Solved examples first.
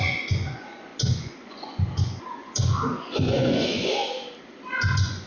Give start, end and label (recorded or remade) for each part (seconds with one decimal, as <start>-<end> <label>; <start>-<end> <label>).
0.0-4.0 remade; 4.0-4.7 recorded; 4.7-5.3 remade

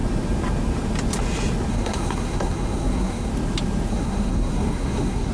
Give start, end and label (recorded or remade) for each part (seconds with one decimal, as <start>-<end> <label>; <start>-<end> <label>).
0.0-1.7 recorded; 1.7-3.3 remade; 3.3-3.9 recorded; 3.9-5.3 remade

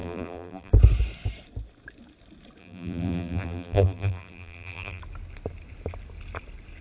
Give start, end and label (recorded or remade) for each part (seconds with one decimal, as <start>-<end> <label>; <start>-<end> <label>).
0.0-0.7 remade; 0.7-2.6 recorded; 2.6-5.0 remade; 5.0-6.8 recorded